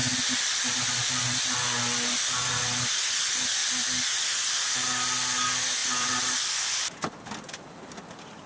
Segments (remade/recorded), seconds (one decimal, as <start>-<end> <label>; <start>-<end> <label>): 0.0-3.6 recorded; 3.6-4.7 remade; 4.7-8.5 recorded